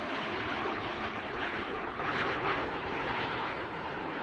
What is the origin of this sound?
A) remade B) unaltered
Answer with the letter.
A